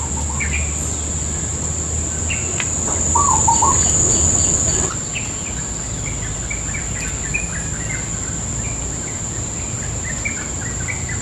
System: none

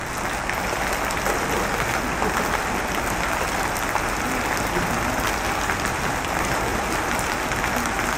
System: none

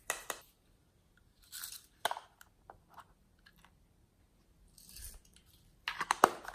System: none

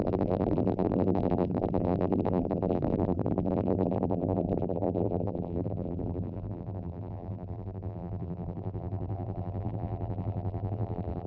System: vocoder, BigVGAN v2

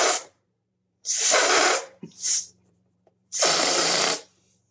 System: vocoder, BigVGAN v2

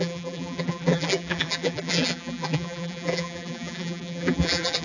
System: vocoder, BigVGAN v2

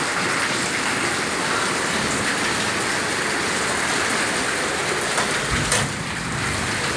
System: none